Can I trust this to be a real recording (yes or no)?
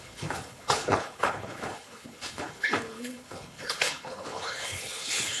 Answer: no